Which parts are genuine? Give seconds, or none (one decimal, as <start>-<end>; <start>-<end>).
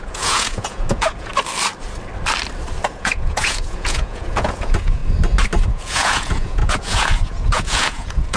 1.3-2.8; 5.0-5.7